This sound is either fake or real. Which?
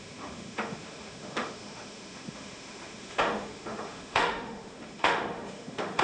fake